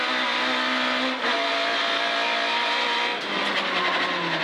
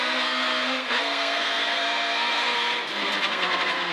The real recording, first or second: first